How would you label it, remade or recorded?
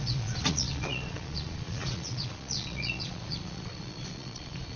remade